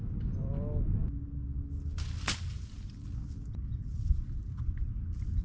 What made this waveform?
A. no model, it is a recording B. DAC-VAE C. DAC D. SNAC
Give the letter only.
A